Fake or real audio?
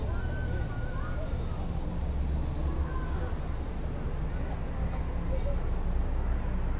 real